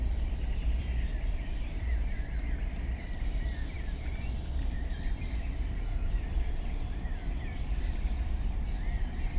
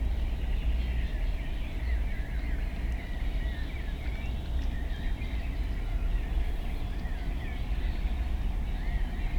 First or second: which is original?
second